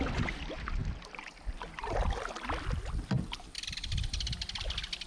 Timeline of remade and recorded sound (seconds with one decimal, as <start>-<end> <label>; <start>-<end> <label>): 0.0-5.1 recorded